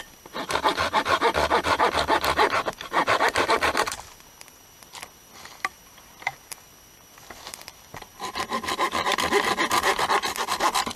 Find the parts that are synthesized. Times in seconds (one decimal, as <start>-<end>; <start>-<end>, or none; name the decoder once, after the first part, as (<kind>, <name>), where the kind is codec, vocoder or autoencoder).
none